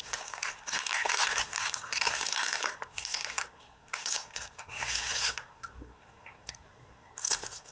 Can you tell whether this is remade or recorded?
remade